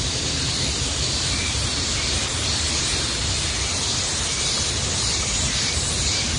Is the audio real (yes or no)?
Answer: no